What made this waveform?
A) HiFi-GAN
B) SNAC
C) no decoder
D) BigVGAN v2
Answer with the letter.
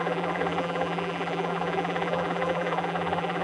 D